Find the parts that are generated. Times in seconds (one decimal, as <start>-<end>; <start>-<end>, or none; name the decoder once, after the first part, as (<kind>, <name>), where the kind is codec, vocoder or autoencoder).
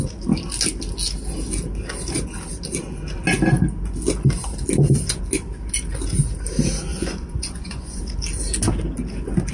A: 6.9-8.0 (vocoder, Vocos)